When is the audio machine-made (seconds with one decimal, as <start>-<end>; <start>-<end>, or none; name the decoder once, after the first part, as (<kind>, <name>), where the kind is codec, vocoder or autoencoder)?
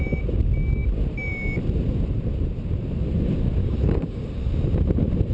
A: 3.6-4.4 (codec, DAC)